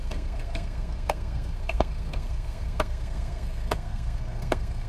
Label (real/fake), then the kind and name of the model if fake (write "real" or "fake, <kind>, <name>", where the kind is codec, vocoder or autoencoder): fake, codec, SNAC